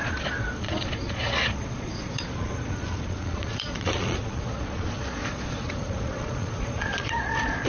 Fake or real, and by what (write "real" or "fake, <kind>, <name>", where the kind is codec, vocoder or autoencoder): fake, vocoder, Vocos